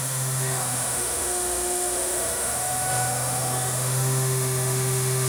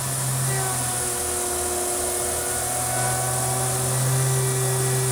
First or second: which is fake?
first